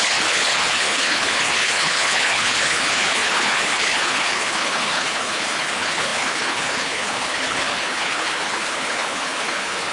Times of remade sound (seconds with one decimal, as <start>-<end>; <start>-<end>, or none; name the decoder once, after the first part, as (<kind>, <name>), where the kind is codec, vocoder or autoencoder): 0.0-9.9 (codec, HILCodec)